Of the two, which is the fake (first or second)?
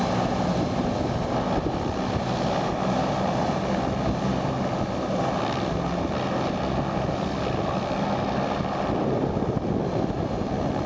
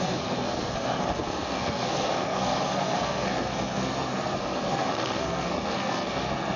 second